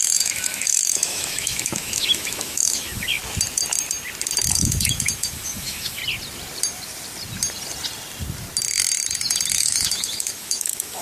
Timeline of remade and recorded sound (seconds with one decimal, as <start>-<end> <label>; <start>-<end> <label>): 0.0-3.2 remade; 3.2-4.5 recorded; 4.5-6.0 remade; 6.0-9.5 recorded; 9.5-11.0 remade

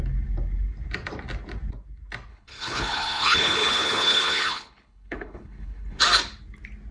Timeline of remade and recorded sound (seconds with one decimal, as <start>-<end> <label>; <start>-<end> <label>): 0.0-2.3 recorded; 2.3-6.0 remade; 6.0-6.9 recorded

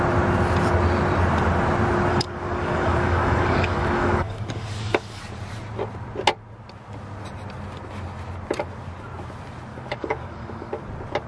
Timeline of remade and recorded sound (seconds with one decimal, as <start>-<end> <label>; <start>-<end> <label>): 0.0-2.1 recorded; 2.1-5.2 remade; 5.2-9.7 recorded; 9.7-10.8 remade; 10.8-11.3 recorded